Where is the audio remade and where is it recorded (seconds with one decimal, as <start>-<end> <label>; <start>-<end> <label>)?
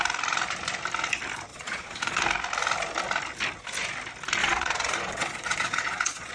0.0-1.5 recorded; 1.5-2.2 remade; 2.2-4.4 recorded; 4.4-6.3 remade